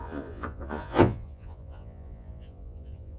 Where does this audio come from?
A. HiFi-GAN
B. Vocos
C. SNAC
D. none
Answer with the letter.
B